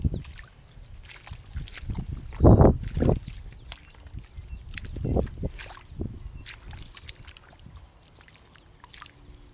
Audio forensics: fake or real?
real